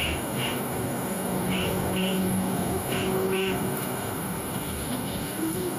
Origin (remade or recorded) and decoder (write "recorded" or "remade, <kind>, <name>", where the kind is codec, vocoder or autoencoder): remade, codec, DAC